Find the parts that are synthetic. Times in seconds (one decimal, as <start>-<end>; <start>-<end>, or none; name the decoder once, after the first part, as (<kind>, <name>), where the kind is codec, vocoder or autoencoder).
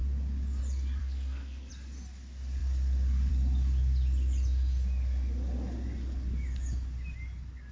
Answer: 1.0-1.7 (codec, SNAC)